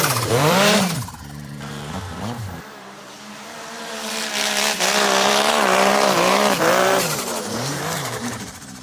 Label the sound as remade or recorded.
remade